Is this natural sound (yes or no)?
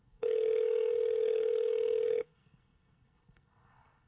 no